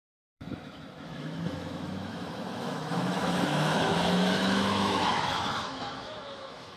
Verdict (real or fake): fake